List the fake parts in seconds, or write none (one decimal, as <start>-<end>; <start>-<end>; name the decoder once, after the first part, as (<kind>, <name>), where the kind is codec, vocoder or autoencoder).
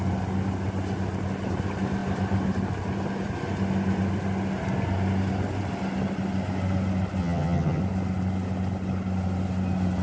7.2-7.8 (vocoder, HiFi-GAN)